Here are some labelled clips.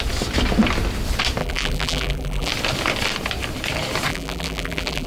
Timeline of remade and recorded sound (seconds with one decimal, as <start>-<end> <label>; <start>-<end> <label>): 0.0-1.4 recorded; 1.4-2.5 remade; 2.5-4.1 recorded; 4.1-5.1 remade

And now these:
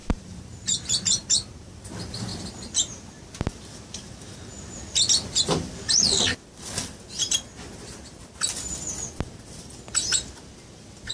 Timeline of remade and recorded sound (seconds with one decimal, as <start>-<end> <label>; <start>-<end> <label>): 0.0-1.7 remade; 1.7-11.1 recorded

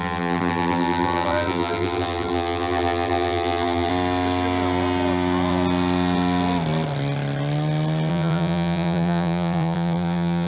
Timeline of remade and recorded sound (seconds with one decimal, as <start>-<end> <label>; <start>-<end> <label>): 0.0-3.9 remade; 3.9-8.1 recorded; 8.1-10.5 remade

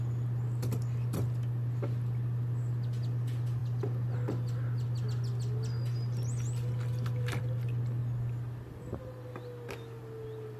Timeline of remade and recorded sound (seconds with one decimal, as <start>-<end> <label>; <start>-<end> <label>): 0.0-10.6 recorded

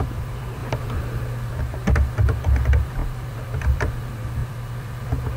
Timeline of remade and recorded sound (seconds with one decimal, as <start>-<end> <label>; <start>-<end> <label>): 0.0-5.4 remade